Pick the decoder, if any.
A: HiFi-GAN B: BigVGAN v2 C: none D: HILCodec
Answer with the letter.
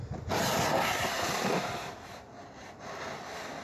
C